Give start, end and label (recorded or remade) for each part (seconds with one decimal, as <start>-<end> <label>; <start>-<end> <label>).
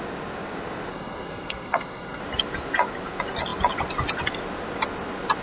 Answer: 0.0-0.9 recorded; 0.9-2.2 remade; 2.2-5.4 recorded